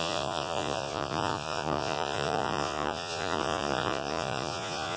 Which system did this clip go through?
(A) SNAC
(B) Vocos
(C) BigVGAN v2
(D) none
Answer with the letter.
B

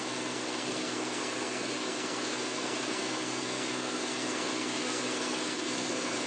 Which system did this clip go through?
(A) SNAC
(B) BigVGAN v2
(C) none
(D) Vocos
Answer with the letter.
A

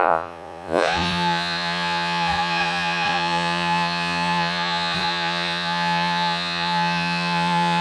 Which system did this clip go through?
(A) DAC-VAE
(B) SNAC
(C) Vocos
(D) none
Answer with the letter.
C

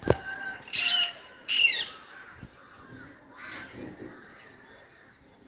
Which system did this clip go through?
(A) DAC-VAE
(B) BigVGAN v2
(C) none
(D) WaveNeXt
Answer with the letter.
B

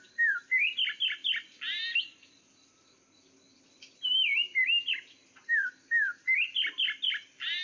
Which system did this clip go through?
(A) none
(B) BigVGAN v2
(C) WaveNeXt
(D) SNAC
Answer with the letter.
A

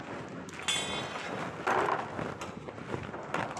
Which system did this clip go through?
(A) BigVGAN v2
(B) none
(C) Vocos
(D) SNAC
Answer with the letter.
B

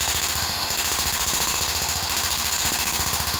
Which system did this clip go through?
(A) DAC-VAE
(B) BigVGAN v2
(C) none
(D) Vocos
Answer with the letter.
A